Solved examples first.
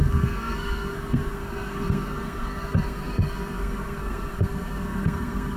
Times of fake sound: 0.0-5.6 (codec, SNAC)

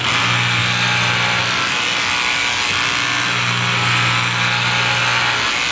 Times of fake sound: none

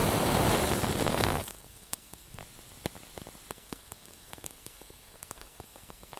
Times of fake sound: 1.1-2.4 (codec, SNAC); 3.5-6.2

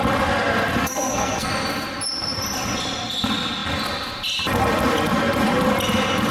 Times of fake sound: 0.8-1.5 (codec, SNAC)